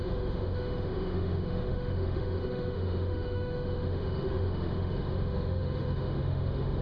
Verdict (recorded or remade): remade